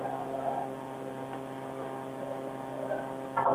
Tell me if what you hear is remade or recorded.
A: recorded